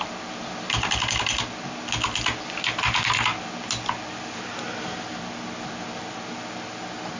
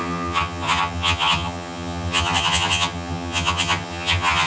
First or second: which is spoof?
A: second